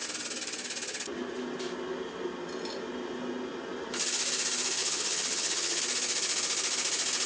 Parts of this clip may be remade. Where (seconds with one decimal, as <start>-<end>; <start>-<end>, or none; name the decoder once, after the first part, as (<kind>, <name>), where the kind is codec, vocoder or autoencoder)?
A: 4.8-5.8 (vocoder, HiFi-GAN)